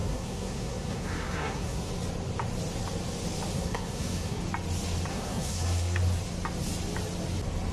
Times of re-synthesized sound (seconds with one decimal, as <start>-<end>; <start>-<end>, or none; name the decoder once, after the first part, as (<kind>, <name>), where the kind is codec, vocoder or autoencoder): 0.0-1.9 (codec, SNAC); 3.5-4.4; 5.1-6.0